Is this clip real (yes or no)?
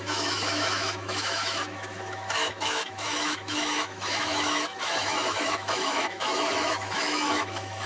no